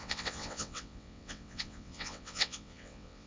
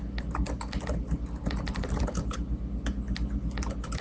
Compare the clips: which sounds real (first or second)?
second